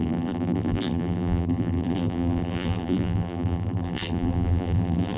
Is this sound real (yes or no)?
no